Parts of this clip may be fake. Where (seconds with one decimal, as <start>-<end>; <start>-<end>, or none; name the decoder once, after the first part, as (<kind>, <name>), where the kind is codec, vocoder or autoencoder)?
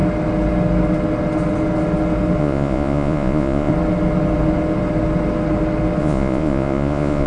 2.4-3.7 (vocoder, Vocos); 6.0-7.3